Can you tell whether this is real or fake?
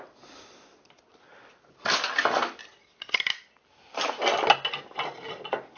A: real